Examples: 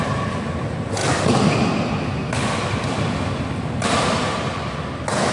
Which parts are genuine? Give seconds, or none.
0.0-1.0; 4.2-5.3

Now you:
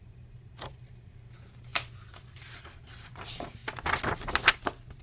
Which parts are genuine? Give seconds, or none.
3.6-5.0

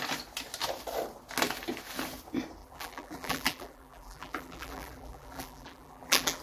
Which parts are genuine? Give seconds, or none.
0.0-2.6

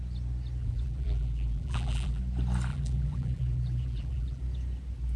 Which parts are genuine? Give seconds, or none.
0.0-0.6; 2.2-2.7; 4.4-5.2

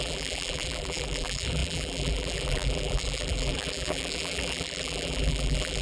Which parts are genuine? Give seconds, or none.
none

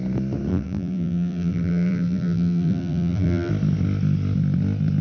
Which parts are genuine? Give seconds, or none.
0.0-0.5; 3.5-5.0

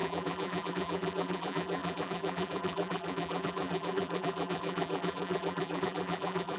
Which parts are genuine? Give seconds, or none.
none

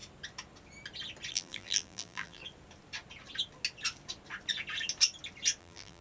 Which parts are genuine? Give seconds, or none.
0.0-1.3; 2.4-5.6